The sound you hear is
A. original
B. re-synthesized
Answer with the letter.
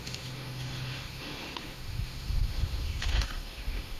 B